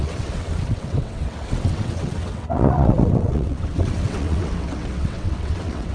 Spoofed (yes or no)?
yes